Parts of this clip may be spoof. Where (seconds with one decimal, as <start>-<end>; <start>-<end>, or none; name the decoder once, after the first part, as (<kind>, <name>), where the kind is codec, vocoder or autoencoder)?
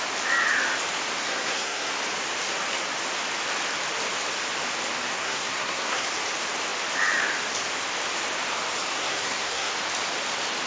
1.2-1.9 (codec, SNAC); 5.1-6.1; 8.9-9.7